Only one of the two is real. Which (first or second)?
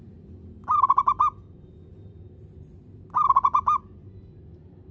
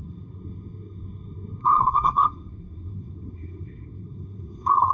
first